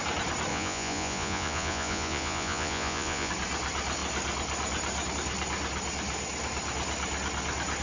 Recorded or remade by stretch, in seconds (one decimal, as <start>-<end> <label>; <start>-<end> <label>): 0.0-0.5 recorded; 0.5-3.3 remade; 3.3-7.8 recorded